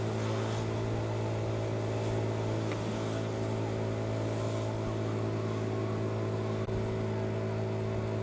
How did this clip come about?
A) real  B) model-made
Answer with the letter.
A